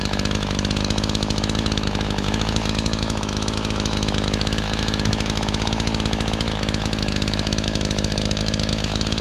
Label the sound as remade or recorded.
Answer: remade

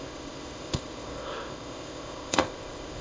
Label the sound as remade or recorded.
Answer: remade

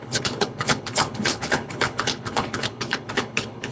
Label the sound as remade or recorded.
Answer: remade